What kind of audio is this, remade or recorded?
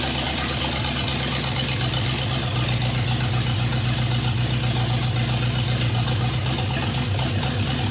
recorded